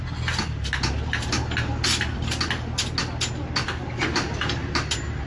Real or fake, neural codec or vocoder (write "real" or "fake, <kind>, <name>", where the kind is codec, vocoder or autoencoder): real